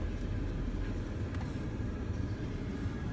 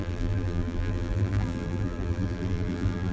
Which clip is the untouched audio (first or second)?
first